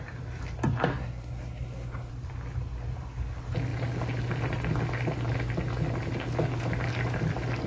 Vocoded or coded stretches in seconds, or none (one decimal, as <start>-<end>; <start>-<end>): 0.9-2.1